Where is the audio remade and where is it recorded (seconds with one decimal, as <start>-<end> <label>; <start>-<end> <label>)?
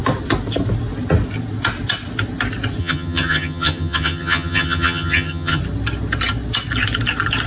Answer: 0.0-2.8 recorded; 2.8-5.6 remade; 5.6-7.5 recorded